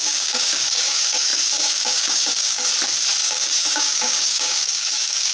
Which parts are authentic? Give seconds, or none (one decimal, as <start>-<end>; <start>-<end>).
2.7-3.2